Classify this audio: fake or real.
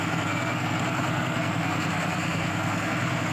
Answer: fake